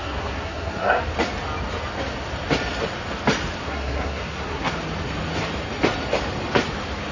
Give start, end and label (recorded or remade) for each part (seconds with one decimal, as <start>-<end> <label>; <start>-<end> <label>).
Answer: 0.0-1.0 remade; 1.0-3.6 recorded; 3.6-4.7 remade; 4.7-7.1 recorded